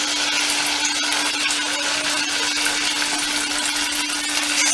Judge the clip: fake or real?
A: real